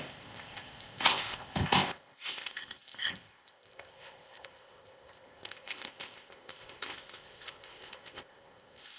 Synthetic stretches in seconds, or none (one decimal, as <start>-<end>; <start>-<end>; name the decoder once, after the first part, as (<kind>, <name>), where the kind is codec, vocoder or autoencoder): 0.0-9.0 (codec, ZipCodec)